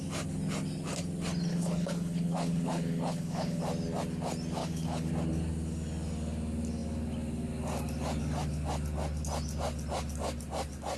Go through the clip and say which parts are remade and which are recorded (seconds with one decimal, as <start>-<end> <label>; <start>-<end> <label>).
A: 0.0-1.5 recorded; 1.5-3.6 remade; 3.6-4.6 recorded; 4.6-5.1 remade; 5.1-11.0 recorded